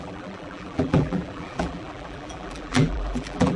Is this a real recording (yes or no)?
no